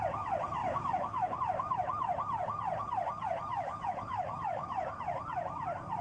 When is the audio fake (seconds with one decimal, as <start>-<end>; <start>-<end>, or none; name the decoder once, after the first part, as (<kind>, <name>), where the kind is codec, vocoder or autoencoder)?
0.6-1.4 (autoencoder, DAC-VAE); 3.5-5.0